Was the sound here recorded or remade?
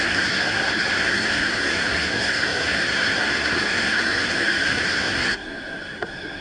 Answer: remade